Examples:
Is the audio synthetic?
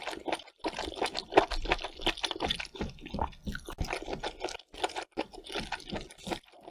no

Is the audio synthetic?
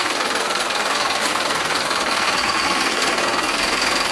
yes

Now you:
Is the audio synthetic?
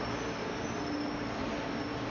no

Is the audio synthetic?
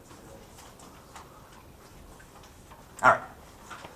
no